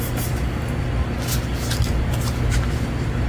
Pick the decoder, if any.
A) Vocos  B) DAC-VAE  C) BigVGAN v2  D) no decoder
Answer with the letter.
D